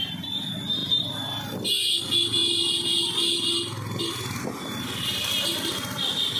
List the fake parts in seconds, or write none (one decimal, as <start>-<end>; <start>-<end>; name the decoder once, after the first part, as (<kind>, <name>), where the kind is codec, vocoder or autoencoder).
0.8-1.7 (vocoder, BigVGAN v2)